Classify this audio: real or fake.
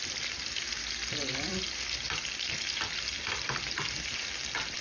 fake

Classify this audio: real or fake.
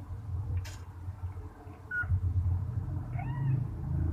fake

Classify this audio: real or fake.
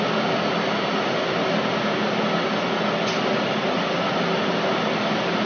real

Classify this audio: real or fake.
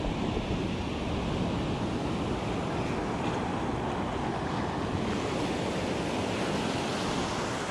real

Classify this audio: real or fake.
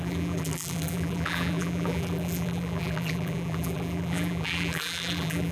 fake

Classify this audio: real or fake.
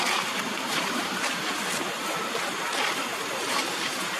fake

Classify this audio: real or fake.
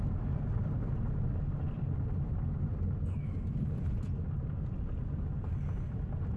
real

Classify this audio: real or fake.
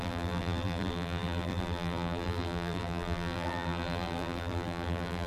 fake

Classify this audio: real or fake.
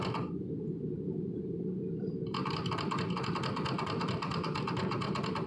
fake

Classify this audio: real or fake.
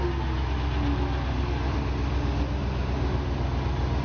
real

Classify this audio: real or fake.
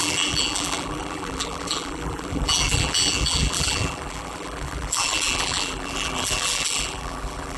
fake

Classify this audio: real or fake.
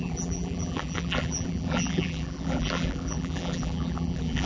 fake